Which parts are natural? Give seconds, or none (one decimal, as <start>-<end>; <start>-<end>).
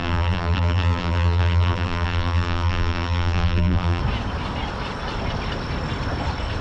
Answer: 4.0-6.6